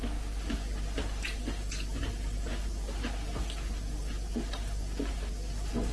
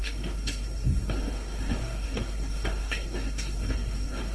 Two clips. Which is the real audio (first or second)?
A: first